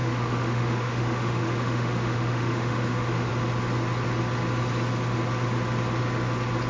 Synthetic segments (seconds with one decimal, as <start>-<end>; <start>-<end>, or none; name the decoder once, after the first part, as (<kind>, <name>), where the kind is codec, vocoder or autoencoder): 0.0-3.3 (autoencoder, DAC-VAE)